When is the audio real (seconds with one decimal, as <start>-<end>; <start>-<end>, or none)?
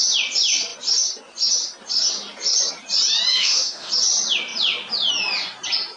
0.0-3.3; 3.9-6.0